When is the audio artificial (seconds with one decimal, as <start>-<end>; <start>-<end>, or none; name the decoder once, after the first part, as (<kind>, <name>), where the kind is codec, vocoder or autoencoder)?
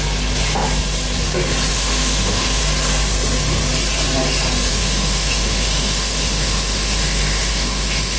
1.7-2.6 (autoencoder, DAC-VAE); 4.7-8.2